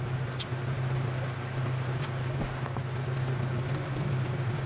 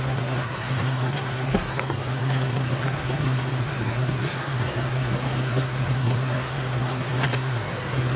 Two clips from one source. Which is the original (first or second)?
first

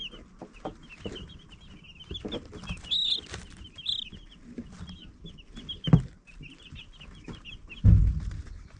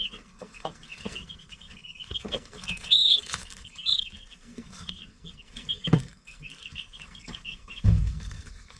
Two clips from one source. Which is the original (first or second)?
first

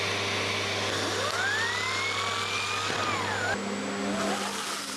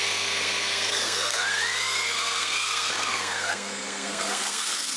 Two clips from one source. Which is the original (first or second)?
first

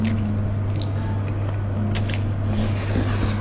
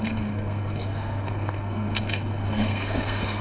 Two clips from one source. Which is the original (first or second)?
first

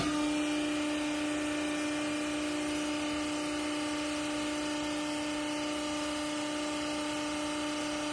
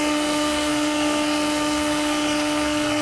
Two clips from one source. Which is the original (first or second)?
first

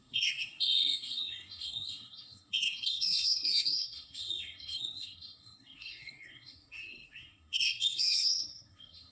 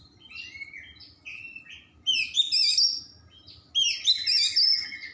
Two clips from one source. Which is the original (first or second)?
second